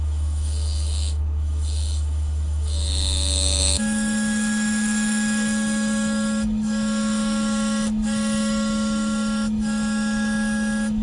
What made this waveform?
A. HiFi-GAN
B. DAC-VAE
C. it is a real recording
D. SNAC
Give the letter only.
B